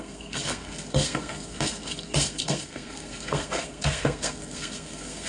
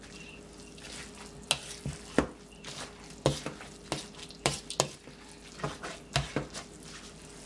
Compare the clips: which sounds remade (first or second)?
first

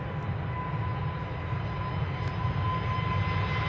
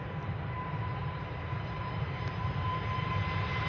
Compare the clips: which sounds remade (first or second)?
second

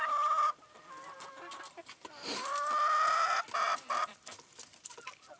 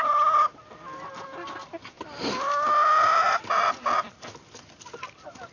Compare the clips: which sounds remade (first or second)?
first